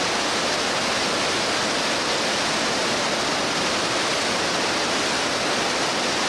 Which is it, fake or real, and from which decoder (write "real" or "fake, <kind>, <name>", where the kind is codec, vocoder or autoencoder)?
real